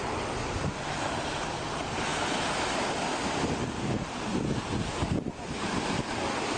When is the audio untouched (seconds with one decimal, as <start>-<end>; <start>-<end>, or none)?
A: 0.0-6.6